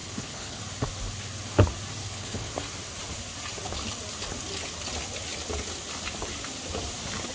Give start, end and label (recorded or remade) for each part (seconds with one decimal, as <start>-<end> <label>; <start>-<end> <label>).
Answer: 0.0-0.6 remade; 0.6-2.0 recorded; 2.0-2.5 remade; 2.5-7.3 recorded